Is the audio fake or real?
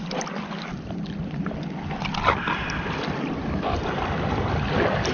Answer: real